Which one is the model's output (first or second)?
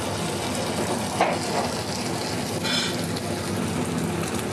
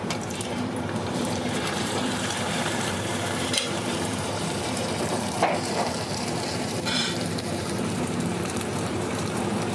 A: second